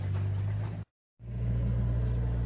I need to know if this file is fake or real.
real